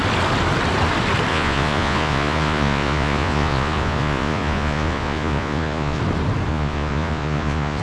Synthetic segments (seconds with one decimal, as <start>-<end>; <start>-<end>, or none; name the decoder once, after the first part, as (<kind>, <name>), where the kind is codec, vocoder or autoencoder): 1.3-6.0 (vocoder, Vocos); 6.5-7.8